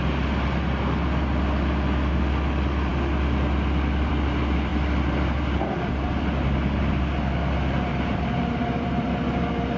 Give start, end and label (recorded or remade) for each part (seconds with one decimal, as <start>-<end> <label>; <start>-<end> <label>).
0.0-9.8 recorded